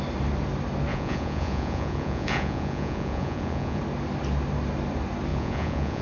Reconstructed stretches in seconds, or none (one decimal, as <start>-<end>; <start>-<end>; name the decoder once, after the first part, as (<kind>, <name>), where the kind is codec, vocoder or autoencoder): 0.9-3.8 (vocoder, Vocos); 5.3-6.0